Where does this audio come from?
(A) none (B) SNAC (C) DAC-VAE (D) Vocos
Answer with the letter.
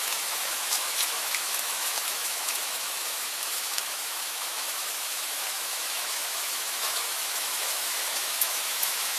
C